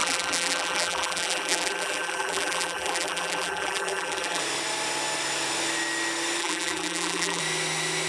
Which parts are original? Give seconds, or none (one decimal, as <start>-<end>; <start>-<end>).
4.4-6.4; 7.4-8.1